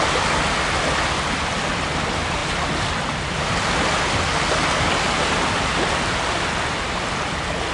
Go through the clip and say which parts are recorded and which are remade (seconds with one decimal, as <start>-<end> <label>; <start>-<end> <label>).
0.0-7.7 recorded